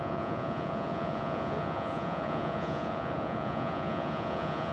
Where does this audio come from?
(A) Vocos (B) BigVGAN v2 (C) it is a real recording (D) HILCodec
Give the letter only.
A